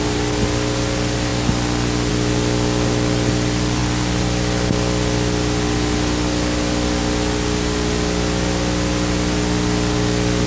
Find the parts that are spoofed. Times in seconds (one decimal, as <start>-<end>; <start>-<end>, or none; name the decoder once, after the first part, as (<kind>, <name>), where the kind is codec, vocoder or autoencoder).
none